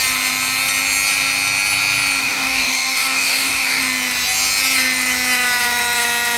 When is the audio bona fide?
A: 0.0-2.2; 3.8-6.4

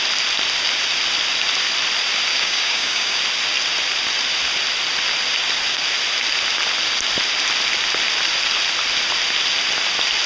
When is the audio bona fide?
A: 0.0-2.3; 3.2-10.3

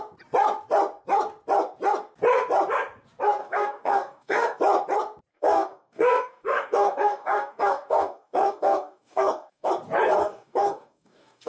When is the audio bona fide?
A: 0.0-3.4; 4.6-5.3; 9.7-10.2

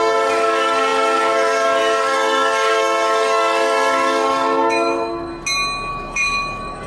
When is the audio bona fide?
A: 5.3-5.9

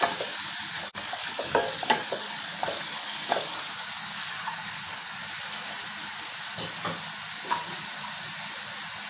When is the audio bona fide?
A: 0.0-0.8; 3.6-4.0; 5.2-9.1